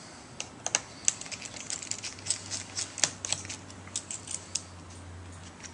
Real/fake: real